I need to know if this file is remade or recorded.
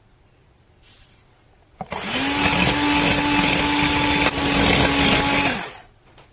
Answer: recorded